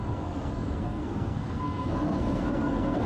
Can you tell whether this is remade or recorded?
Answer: remade